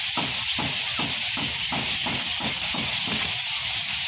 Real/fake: real